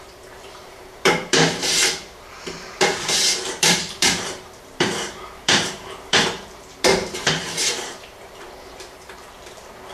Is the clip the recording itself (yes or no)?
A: no